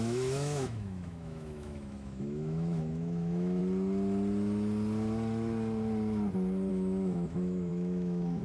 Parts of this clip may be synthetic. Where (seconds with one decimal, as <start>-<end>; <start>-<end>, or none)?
0.0-3.6; 6.7-8.4